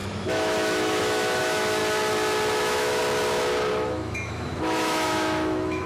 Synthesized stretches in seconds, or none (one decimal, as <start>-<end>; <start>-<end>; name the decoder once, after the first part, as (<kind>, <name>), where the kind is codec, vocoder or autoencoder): 0.0-1.8 (autoencoder, DAC-VAE); 2.6-3.0; 3.7-5.9